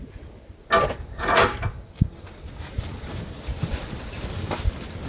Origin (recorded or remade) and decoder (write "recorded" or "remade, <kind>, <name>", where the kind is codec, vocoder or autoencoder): recorded